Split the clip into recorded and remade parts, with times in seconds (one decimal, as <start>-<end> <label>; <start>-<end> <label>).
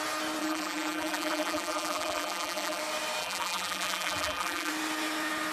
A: 0.0-0.4 recorded; 0.4-2.8 remade; 2.8-3.2 recorded; 3.2-4.7 remade; 4.7-5.5 recorded